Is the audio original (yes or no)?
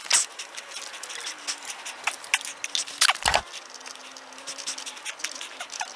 yes